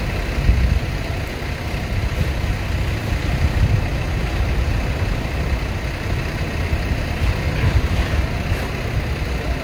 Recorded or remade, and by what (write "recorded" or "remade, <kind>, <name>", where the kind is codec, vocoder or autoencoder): recorded